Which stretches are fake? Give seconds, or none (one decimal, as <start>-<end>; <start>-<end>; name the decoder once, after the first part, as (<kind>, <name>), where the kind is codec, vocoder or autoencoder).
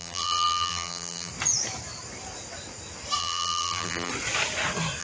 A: 0.0-1.3 (vocoder, BigVGAN v2); 3.2-4.1